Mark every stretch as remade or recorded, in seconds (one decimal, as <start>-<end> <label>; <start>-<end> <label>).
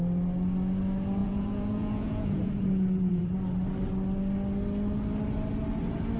0.0-1.2 recorded; 1.2-3.2 remade; 3.2-6.2 recorded